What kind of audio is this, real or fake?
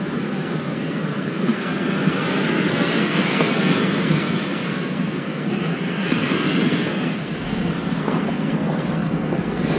fake